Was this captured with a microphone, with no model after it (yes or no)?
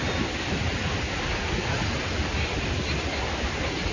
yes